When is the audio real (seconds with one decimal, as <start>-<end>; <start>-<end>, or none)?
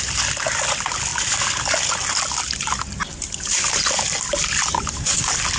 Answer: 0.0-5.6